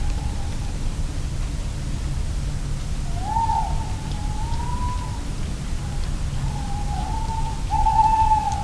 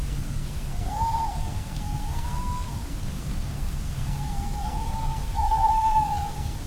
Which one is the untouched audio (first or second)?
first